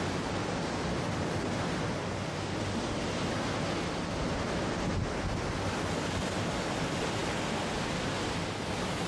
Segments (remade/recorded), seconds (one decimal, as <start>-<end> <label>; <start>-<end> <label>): 0.0-9.1 recorded